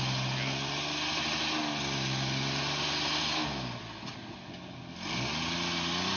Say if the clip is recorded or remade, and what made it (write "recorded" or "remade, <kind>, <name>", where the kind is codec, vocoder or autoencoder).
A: recorded